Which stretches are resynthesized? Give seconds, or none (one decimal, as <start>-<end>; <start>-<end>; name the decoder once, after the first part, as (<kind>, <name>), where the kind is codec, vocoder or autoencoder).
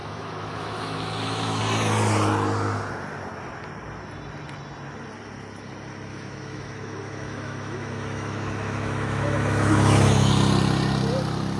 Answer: 0.0-1.6 (autoencoder, DAC-VAE); 6.1-10.3